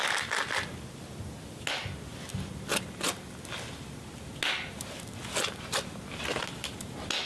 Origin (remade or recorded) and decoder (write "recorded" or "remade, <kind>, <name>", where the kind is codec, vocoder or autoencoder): recorded